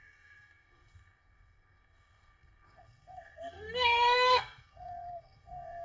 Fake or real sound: fake